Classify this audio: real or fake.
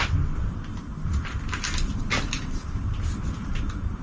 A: real